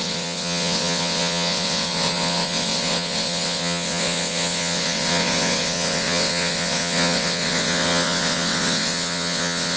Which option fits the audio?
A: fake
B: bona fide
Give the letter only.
A